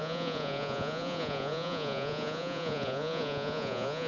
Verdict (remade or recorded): remade